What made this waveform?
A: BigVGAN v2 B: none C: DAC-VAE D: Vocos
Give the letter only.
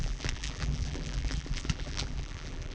A